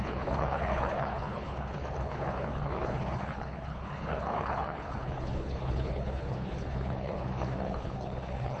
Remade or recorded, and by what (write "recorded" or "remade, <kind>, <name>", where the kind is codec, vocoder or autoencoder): remade, codec, HILCodec